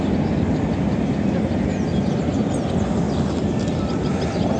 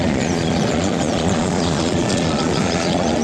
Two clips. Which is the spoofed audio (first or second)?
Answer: second